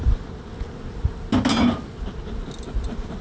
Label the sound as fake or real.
real